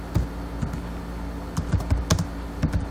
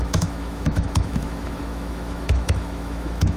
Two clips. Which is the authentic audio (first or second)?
first